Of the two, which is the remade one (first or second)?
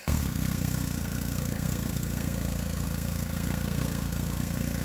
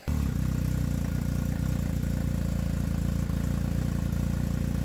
first